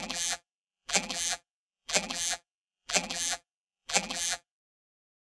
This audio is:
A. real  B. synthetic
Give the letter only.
B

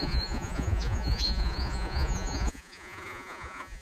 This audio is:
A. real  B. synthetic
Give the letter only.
B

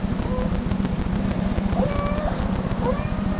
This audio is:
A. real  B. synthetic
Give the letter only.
A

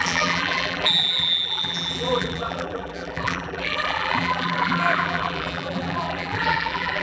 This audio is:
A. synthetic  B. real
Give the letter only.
A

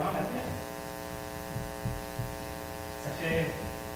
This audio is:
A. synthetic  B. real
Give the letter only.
B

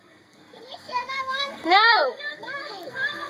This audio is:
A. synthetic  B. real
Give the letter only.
A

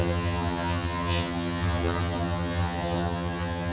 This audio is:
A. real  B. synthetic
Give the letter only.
B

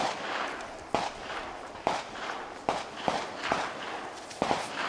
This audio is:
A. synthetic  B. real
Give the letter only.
B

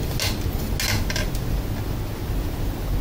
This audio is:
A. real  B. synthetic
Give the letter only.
A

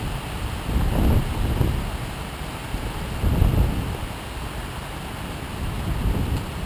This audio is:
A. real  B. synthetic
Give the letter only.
A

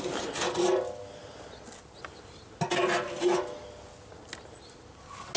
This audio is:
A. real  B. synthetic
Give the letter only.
A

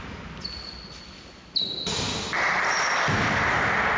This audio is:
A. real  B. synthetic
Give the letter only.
A